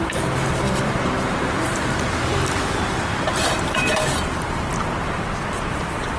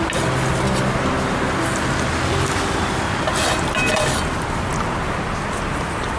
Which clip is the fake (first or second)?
first